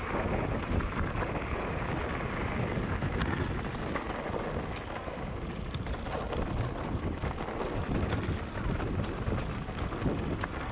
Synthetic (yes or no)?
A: no